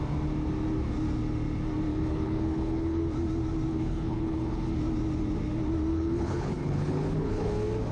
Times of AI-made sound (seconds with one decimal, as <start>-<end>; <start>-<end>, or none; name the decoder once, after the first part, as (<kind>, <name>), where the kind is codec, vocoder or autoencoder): 1.9-3.0 (codec, HILCodec); 3.7-4.7; 5.9-7.5